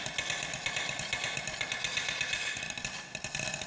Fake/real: real